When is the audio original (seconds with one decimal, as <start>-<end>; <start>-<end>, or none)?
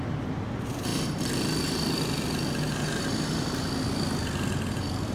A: 0.0-5.1